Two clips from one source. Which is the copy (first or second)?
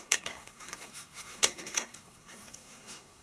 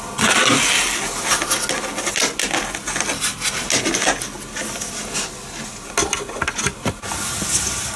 first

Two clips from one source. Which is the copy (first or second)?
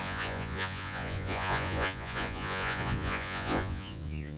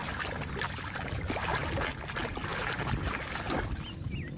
first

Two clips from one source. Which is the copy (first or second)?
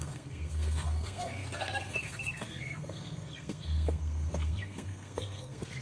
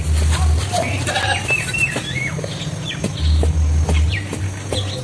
first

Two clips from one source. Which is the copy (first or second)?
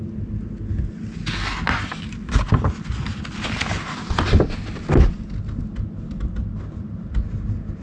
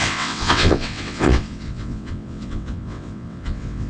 second